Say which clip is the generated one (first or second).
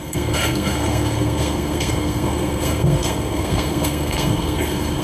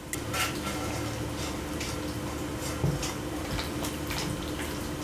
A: first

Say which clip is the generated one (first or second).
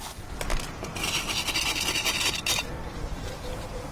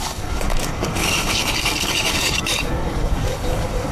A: second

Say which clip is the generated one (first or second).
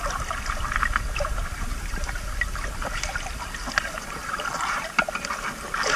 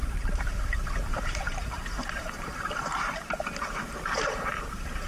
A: second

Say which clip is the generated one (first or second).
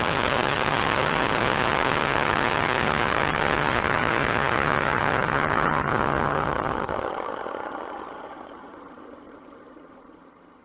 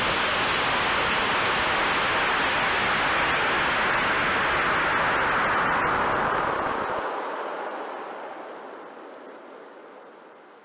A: first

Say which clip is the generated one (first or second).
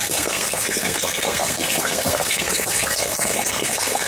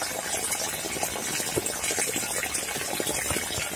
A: first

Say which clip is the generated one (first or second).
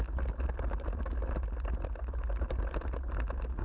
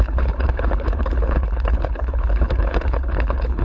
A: second